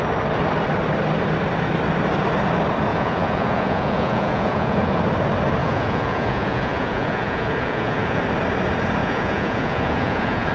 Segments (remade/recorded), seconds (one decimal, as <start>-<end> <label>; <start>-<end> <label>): 0.0-2.9 recorded; 2.9-5.0 remade; 5.0-5.6 recorded; 5.6-8.2 remade; 8.2-9.0 recorded; 9.0-10.5 remade